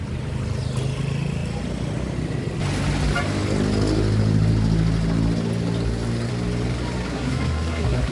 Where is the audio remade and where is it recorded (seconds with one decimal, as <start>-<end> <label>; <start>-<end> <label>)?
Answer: 0.0-7.1 recorded; 7.1-8.1 remade